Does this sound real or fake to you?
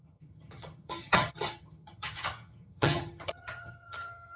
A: fake